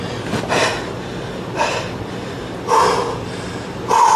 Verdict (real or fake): real